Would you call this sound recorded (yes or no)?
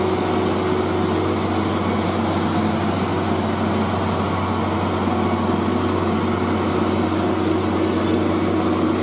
yes